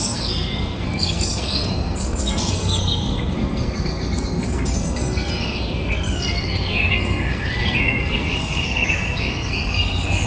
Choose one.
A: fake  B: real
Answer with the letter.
A